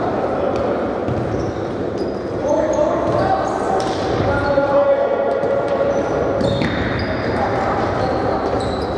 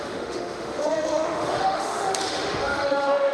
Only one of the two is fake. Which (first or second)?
second